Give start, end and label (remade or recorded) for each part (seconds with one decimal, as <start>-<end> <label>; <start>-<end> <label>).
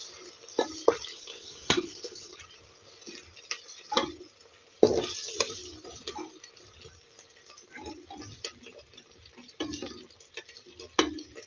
0.0-1.1 recorded; 1.1-2.4 remade; 2.4-11.5 recorded